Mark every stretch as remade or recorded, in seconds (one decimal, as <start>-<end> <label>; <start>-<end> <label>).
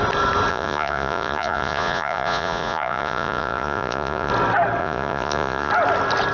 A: 0.0-0.5 recorded; 0.5-4.3 remade; 4.3-4.8 recorded; 4.8-5.7 remade; 5.7-6.3 recorded